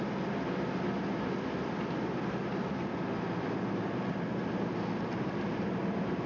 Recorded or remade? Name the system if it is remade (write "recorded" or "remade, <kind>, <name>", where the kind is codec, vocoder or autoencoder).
recorded